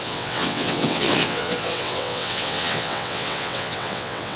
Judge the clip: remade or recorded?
remade